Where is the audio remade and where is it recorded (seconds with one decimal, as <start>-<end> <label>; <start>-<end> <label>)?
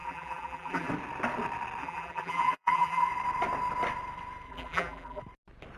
0.0-0.9 remade; 0.9-1.8 recorded; 1.8-3.1 remade; 3.1-4.5 recorded; 4.5-5.2 remade; 5.2-5.8 recorded